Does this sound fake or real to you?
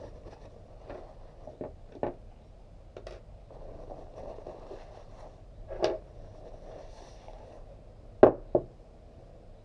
real